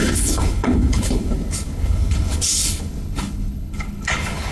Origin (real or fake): fake